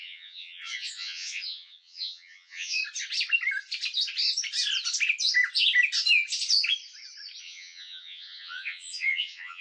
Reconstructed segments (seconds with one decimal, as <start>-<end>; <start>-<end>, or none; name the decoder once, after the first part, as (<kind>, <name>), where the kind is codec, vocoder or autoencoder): 0.0-2.8 (vocoder, Vocos); 7.4-9.6